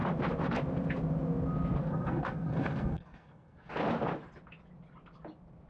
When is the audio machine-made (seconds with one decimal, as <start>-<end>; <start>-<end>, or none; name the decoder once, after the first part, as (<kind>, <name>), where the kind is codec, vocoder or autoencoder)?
1.8-3.7 (codec, SNAC)